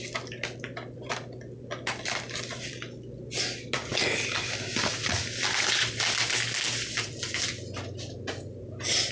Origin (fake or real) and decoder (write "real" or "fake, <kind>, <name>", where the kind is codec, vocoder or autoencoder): real